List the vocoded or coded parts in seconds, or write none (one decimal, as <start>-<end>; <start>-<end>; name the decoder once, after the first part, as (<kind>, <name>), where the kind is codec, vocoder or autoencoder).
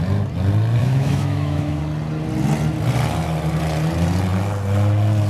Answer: 0.8-1.8 (autoencoder, DAC-VAE)